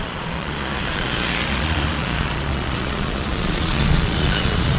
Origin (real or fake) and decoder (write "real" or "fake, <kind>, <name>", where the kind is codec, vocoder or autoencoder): fake, vocoder, Vocos